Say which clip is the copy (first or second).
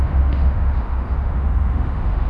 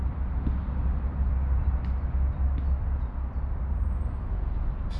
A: first